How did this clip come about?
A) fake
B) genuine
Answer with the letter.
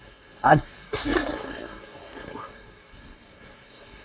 A